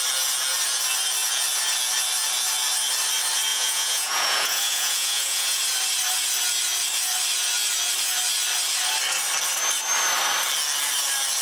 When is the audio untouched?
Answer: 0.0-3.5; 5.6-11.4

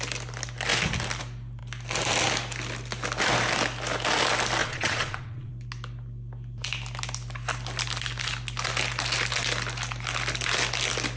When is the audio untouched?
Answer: 0.0-4.6; 5.5-11.2

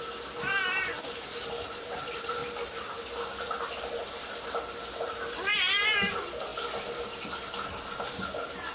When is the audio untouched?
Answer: 0.0-8.7

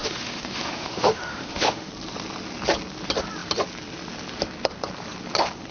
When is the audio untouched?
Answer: 1.9-5.7

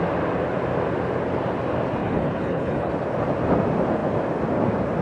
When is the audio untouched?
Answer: 0.0-2.0; 2.9-5.0

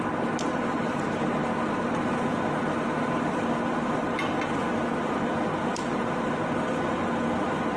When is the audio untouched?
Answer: 0.0-7.8

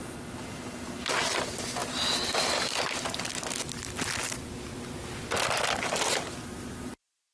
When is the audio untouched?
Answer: 0.0-7.3

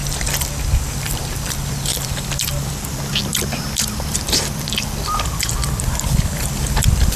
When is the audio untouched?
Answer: 0.0-0.8